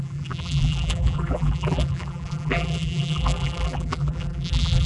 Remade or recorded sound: remade